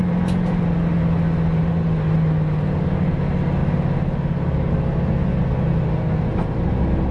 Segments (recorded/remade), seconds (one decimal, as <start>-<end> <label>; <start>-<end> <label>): 0.0-7.1 recorded

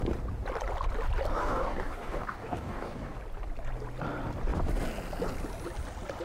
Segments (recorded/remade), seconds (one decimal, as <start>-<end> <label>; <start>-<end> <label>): 0.0-1.4 recorded; 1.4-3.2 remade; 3.2-6.2 recorded